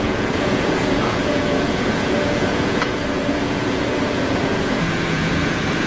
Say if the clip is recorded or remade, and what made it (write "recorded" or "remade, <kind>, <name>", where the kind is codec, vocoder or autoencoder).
remade, vocoder, Vocos